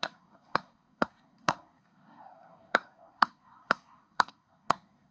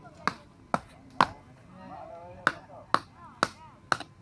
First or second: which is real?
second